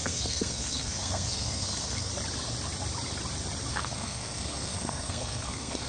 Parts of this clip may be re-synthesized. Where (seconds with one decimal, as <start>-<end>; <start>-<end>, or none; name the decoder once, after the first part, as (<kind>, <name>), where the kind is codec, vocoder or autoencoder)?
0.0-2.1 (codec, SNAC); 3.7-5.9

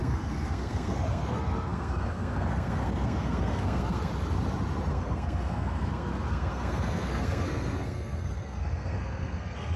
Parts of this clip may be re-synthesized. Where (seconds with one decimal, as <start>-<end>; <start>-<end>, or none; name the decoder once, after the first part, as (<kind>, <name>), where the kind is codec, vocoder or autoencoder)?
0.0-4.1 (codec, SNAC); 4.9-9.8

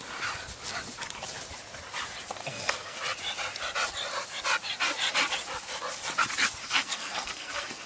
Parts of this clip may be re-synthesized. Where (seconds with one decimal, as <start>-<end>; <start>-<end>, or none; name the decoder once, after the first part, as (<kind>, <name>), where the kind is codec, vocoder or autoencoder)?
2.4-3.0 (codec, SNAC); 6.6-7.9

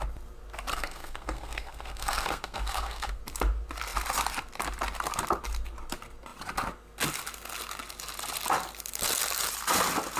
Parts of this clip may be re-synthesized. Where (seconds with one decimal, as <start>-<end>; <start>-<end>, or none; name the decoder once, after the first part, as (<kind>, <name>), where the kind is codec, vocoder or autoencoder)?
0.7-3.2 (codec, SNAC)